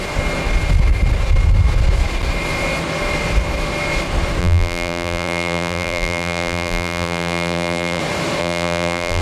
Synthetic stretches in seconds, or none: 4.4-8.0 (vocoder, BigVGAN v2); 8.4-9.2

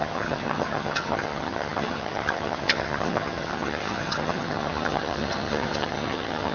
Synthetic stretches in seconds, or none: 0.0-6.5 (vocoder, HiFi-GAN)

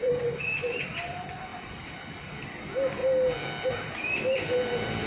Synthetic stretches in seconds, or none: 0.0-3.0 (vocoder, BigVGAN v2); 3.7-5.1

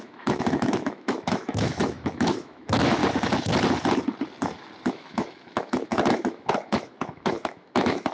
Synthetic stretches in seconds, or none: 0.0-3.0 (autoencoder, DAC-VAE); 4.9-8.1